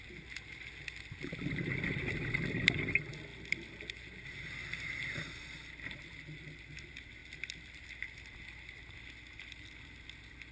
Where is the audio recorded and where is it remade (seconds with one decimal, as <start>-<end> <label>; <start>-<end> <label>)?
0.0-10.5 recorded